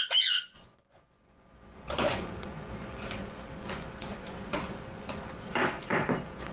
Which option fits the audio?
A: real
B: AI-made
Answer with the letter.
B